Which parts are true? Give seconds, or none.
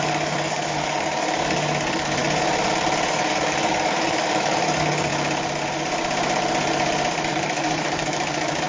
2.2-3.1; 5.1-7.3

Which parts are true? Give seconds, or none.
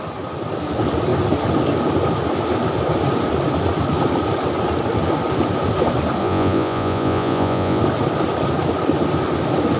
0.0-6.2; 7.8-9.8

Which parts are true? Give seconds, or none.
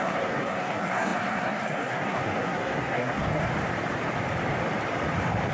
3.5-5.5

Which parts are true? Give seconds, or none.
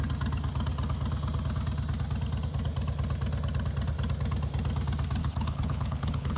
0.0-5.2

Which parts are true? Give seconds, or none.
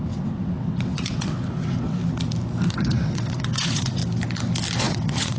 2.0-2.7; 4.0-4.8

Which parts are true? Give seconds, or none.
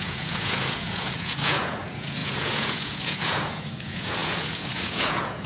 none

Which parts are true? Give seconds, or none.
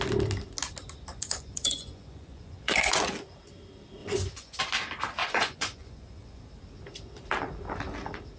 0.0-1.1; 3.0-4.0; 4.6-5.2; 6.4-8.4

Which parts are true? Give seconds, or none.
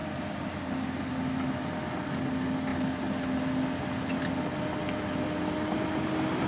0.0-6.5